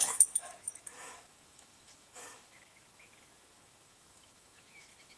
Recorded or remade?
remade